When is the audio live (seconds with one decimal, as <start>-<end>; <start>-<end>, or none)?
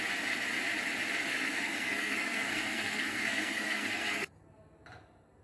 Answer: 0.0-1.3; 4.3-5.4